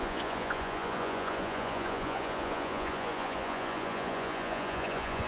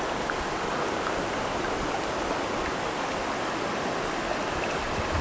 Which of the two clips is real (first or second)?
second